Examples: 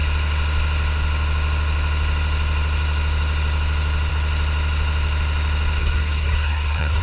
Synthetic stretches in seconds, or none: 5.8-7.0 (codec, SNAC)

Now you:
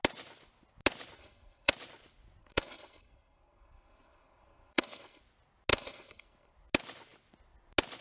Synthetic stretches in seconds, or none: 1.2-1.7 (codec, SNAC); 2.4-5.2; 5.7-6.5

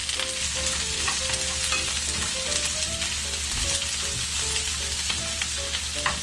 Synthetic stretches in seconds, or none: none